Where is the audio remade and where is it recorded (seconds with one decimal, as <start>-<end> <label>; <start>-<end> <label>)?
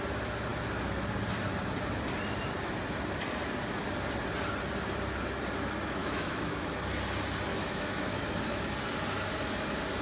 0.0-6.0 recorded; 6.0-6.7 remade; 6.7-7.5 recorded; 7.5-8.2 remade; 8.2-10.0 recorded